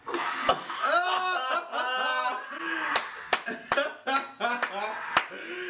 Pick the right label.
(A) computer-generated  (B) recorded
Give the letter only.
B